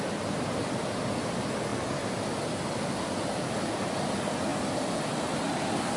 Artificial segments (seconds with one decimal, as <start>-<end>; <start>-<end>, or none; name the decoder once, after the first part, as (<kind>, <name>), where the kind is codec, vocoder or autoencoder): none